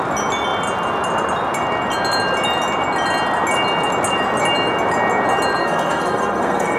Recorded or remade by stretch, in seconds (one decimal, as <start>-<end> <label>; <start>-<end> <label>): 0.0-5.6 recorded; 5.6-6.8 remade